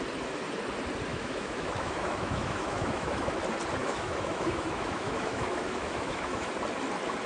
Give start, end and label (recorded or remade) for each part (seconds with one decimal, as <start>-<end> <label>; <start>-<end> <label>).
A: 0.0-1.1 recorded; 1.1-3.4 remade; 3.4-3.8 recorded; 3.8-6.5 remade; 6.5-7.3 recorded